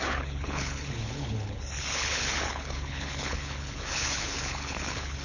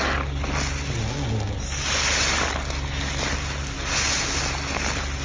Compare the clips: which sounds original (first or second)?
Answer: second